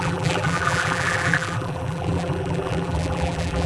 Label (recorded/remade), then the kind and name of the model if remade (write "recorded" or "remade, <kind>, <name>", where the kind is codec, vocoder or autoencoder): remade, vocoder, BigVGAN v2